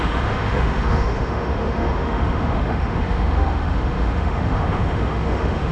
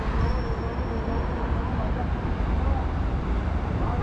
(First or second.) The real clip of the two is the second